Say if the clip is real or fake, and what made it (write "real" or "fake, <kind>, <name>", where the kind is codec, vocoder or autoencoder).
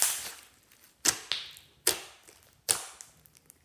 real